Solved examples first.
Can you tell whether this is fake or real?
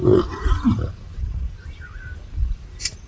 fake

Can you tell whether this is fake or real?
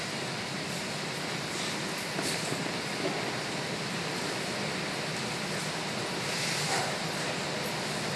fake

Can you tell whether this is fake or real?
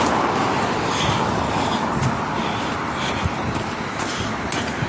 real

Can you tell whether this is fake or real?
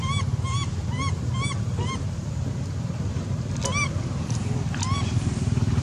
real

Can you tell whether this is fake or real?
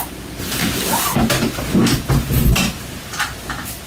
real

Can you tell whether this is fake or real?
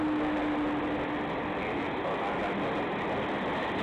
real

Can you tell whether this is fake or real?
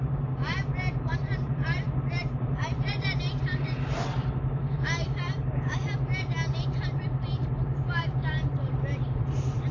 fake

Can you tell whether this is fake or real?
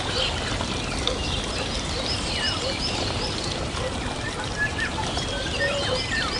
fake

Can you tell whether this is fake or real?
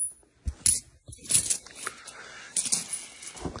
real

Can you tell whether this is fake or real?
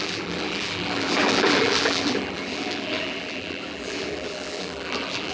fake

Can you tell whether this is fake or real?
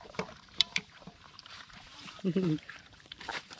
fake